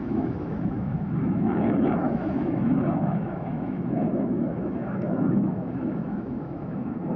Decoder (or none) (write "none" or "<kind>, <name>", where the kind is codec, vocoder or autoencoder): autoencoder, DAC-VAE